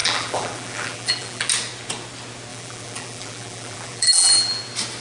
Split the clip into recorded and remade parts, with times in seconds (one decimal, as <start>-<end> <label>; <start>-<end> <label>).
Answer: 0.0-1.5 remade; 1.5-2.5 recorded; 2.5-4.6 remade; 4.6-5.0 recorded